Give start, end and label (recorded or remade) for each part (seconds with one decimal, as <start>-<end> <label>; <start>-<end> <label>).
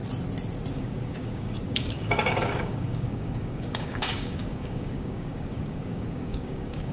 0.0-0.7 recorded; 0.7-6.9 remade